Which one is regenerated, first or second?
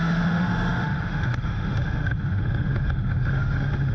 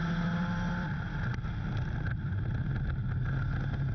first